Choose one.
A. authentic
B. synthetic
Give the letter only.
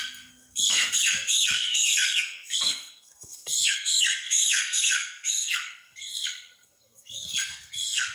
B